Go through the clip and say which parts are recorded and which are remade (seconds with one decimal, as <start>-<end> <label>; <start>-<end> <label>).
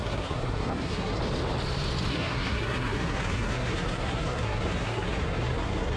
0.0-1.2 remade; 1.2-2.1 recorded; 2.1-6.0 remade